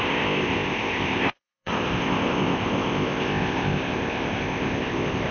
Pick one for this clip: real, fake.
fake